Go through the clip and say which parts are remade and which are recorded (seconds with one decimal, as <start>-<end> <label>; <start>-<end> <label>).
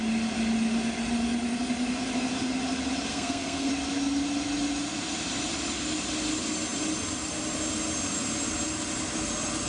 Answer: 0.0-3.1 recorded; 3.1-3.7 remade; 3.7-9.7 recorded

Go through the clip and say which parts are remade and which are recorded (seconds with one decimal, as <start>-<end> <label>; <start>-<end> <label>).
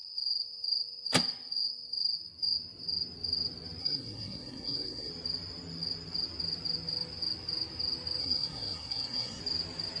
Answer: 0.0-3.8 recorded; 3.8-5.1 remade; 5.1-8.2 recorded; 8.2-9.4 remade; 9.4-10.0 recorded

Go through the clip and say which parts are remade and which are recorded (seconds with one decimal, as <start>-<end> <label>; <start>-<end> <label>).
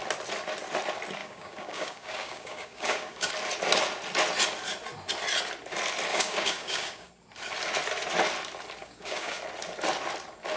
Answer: 0.0-1.2 recorded; 1.2-3.3 remade; 3.3-6.1 recorded; 6.1-7.1 remade; 7.1-8.8 recorded; 8.8-9.4 remade; 9.4-10.6 recorded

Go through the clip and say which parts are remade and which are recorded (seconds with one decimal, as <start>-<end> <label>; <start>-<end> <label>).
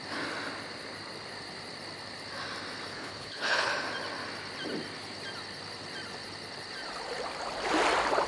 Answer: 0.0-2.9 recorded; 2.9-3.7 remade; 3.7-8.3 recorded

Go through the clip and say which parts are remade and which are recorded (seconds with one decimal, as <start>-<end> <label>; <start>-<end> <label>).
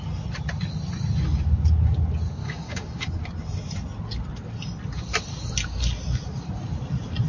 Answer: 0.0-2.4 recorded; 2.4-3.2 remade; 3.2-7.3 recorded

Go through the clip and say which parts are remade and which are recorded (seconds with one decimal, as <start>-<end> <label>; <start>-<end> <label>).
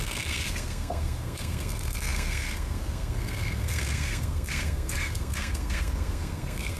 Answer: 0.0-6.8 remade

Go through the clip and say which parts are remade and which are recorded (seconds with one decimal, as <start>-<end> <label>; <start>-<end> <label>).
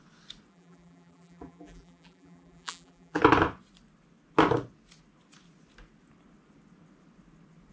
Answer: 0.0-0.5 recorded; 0.5-3.2 remade; 3.2-7.7 recorded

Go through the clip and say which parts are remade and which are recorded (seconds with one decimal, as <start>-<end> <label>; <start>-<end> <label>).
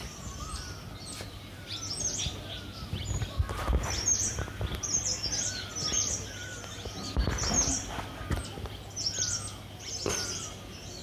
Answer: 0.0-11.0 recorded